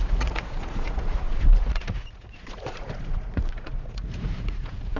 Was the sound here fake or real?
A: fake